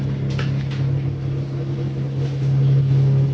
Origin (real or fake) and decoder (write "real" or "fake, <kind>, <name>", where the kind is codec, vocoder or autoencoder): real